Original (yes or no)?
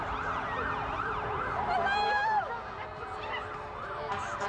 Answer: yes